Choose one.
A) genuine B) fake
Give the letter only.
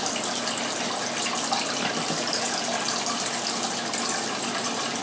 A